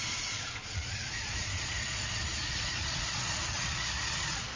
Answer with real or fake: fake